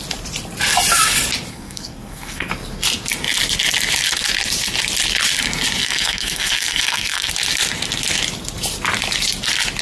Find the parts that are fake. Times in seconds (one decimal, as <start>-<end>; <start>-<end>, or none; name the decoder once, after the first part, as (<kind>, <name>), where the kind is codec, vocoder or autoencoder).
1.5-2.5 (codec, SNAC); 5.8-7.3